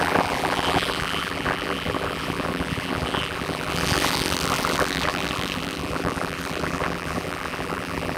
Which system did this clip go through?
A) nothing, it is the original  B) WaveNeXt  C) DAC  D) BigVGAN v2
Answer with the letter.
D